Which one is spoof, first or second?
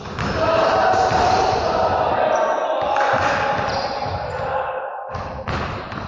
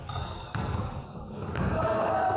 second